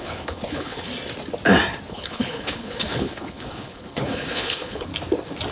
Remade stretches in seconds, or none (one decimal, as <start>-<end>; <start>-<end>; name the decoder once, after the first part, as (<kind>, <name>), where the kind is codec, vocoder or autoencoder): 0.0-0.9 (codec, HILCodec); 1.9-4.9